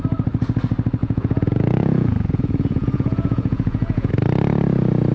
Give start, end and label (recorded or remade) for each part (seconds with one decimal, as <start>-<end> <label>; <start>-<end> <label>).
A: 0.0-1.0 recorded; 1.0-4.1 remade; 4.1-5.1 recorded